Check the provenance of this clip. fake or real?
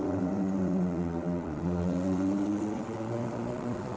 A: fake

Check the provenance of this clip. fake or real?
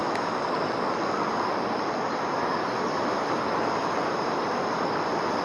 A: real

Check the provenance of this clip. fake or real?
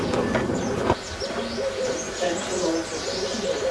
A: real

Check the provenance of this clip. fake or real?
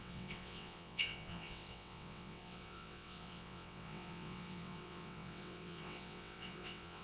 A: fake